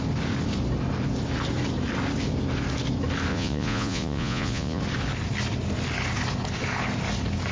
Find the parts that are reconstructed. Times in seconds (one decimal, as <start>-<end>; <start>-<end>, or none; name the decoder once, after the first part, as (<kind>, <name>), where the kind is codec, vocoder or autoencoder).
3.3-4.8 (vocoder, Vocos)